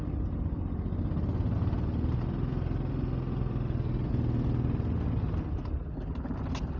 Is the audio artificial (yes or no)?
no